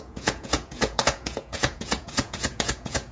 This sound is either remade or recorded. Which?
remade